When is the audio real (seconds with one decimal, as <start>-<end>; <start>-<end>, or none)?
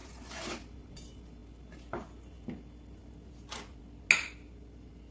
0.0-5.1